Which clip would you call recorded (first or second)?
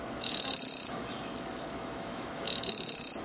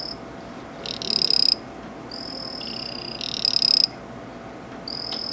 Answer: second